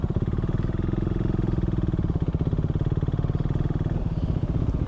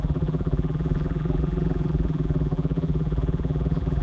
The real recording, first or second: first